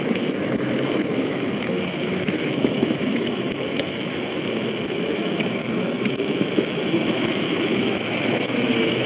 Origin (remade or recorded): remade